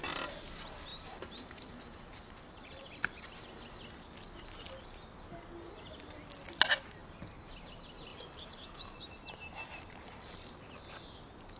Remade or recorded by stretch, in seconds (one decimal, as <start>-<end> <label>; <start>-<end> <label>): 0.0-0.9 recorded; 0.9-3.3 remade; 3.3-8.1 recorded; 8.1-10.5 remade; 10.5-11.6 recorded